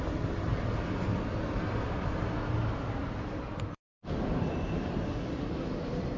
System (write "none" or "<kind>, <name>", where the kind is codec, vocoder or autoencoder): none